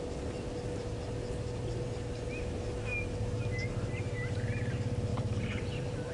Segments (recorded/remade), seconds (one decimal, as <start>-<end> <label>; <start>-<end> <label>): 0.0-5.1 recorded; 5.1-6.1 remade